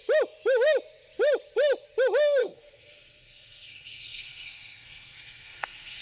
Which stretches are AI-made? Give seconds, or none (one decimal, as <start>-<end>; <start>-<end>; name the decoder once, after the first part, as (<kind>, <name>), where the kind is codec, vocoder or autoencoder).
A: 2.4-6.0 (codec, SNAC)